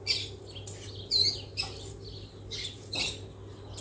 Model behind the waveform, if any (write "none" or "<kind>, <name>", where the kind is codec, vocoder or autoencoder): none